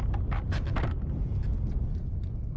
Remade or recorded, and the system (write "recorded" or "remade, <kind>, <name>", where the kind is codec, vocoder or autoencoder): recorded